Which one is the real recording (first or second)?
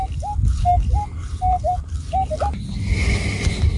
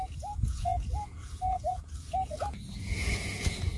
first